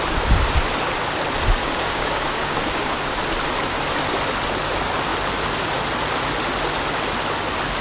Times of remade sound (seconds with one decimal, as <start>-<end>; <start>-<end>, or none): 1.6-2.9